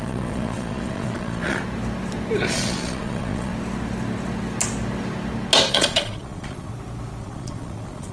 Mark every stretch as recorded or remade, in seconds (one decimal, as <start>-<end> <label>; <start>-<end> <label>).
0.0-1.6 remade; 1.6-2.5 recorded; 2.5-3.5 remade; 3.5-5.7 recorded; 5.7-6.7 remade; 6.7-7.2 recorded; 7.2-8.1 remade